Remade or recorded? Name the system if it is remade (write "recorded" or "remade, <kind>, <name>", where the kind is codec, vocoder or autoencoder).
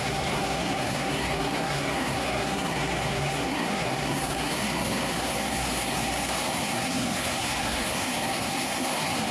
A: remade, codec, SNAC